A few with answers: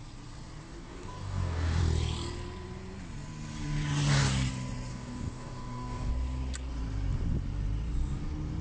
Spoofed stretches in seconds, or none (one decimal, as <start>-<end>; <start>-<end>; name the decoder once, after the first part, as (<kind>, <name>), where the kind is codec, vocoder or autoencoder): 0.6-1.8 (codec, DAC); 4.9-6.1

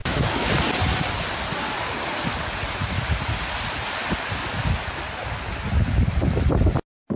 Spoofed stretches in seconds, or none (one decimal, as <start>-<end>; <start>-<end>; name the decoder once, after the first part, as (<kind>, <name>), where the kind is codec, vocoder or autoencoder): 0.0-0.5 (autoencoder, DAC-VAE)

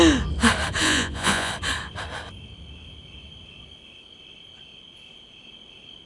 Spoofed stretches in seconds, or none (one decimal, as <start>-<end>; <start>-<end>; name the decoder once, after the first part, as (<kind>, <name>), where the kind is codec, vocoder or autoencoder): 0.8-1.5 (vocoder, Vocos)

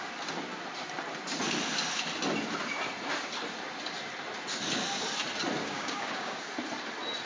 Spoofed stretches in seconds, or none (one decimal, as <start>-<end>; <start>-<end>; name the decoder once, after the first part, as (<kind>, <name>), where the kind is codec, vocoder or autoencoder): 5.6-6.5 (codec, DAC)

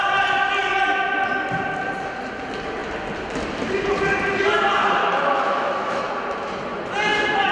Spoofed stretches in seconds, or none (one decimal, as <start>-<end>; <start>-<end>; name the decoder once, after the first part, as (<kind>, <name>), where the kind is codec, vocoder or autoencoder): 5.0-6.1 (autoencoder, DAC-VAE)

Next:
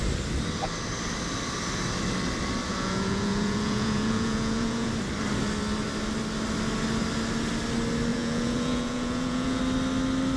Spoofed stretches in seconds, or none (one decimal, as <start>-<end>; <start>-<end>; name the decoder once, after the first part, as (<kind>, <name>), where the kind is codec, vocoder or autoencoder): 2.7-4.9 (vocoder, Vocos); 8.1-9.6

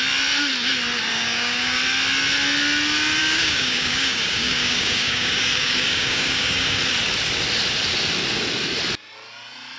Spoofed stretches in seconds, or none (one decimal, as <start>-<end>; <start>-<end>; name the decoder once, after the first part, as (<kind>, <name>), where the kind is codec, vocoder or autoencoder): 1.1-1.8 (codec, DAC); 3.2-6.8